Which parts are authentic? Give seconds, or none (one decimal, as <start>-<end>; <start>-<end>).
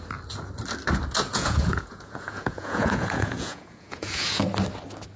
0.0-1.3; 4.4-5.2